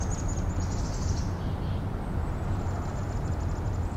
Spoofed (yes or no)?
no